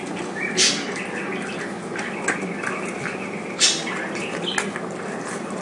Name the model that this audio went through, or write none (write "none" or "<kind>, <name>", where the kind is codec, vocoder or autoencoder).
none